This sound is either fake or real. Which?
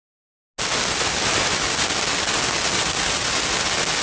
real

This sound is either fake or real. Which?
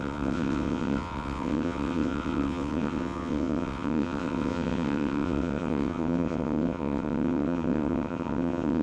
fake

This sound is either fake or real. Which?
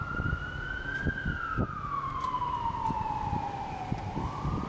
real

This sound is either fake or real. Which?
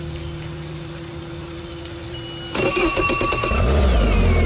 real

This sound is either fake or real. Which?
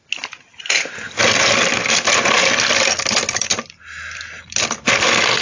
real